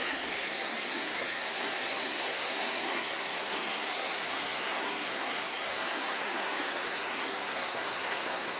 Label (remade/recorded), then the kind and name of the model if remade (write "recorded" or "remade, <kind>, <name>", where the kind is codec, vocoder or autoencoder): remade, codec, SNAC